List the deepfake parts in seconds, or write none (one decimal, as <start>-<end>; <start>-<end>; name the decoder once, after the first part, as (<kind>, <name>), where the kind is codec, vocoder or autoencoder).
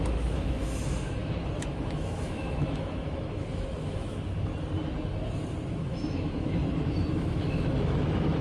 0.0-4.5 (autoencoder, DAC-VAE); 5.7-6.6; 7.1-8.4